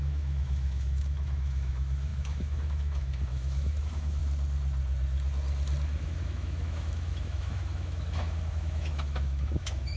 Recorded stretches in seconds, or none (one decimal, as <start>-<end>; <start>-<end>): 4.2-6.0